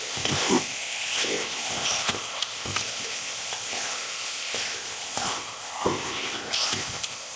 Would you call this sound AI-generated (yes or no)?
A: yes